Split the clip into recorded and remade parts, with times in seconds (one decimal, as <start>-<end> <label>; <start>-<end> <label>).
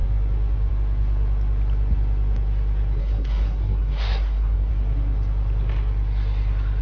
0.0-3.0 recorded; 3.0-4.7 remade; 4.7-6.8 recorded